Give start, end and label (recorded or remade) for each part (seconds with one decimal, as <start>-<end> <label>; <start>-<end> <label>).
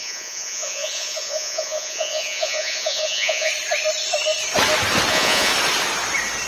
0.0-3.5 remade; 3.5-5.1 recorded; 5.1-5.5 remade; 5.5-6.5 recorded